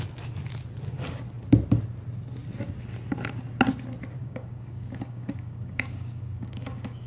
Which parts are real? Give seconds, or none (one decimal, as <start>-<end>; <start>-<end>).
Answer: 0.0-4.2